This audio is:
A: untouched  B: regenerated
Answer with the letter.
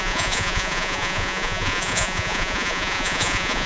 B